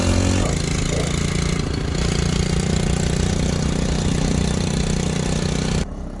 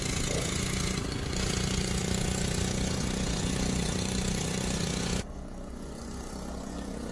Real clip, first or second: first